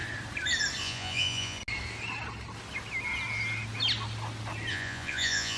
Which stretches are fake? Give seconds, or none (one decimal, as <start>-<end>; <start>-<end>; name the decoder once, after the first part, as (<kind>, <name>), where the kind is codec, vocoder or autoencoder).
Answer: 0.8-1.6 (vocoder, Vocos); 4.7-5.6